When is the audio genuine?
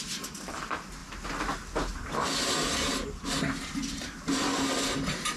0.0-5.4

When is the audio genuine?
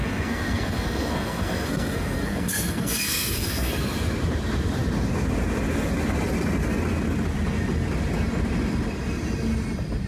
3.7-10.1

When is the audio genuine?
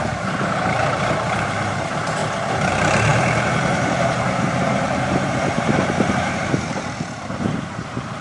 2.2-2.7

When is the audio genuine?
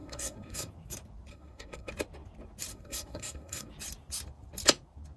0.7-1.3; 1.9-2.7; 3.7-5.2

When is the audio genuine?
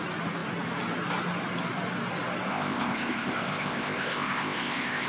0.0-2.5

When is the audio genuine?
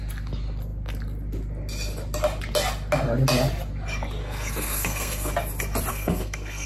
0.0-4.2; 5.3-5.9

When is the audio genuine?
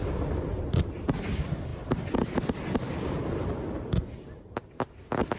0.0-5.4